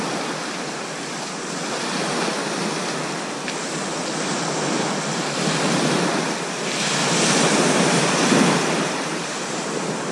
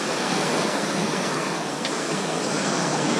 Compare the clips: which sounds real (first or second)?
first